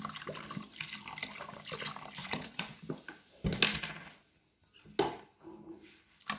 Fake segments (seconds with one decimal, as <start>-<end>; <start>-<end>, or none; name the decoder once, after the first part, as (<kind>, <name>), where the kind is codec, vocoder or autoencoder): 2.2-2.8 (vocoder, Vocos)